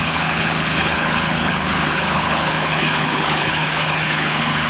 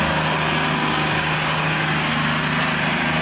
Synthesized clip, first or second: first